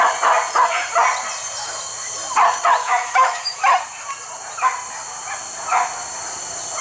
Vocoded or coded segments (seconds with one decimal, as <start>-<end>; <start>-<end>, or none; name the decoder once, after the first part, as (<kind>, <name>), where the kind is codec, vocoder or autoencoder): 2.8-3.6 (autoencoder, DAC-VAE)